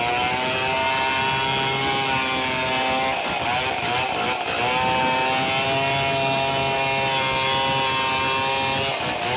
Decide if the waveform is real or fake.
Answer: real